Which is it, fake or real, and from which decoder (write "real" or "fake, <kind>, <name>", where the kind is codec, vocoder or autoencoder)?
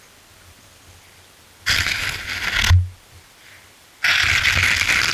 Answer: real